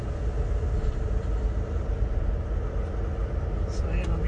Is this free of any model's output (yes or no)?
yes